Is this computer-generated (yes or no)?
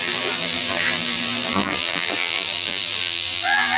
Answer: yes